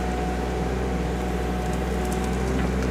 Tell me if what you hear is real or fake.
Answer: real